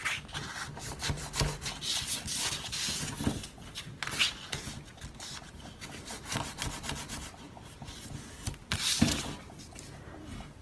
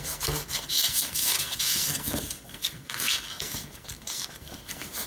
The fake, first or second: second